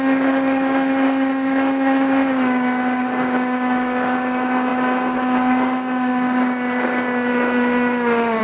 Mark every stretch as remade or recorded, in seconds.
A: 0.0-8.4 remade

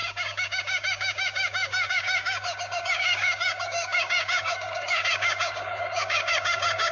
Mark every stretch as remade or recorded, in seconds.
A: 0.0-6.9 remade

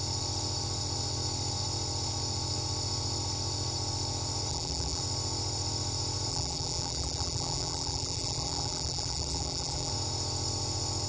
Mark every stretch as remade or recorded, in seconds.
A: 0.0-4.5 recorded; 4.5-5.0 remade; 5.0-6.3 recorded; 6.3-9.9 remade; 9.9-11.1 recorded

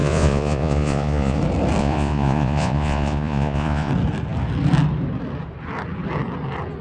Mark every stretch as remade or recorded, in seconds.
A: 0.0-1.4 remade; 1.4-1.8 recorded; 1.8-3.9 remade; 3.9-6.8 recorded

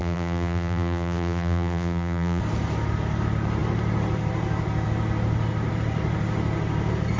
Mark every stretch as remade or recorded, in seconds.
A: 0.0-2.4 remade; 2.4-7.2 recorded